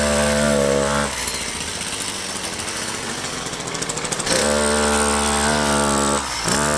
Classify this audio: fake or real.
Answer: real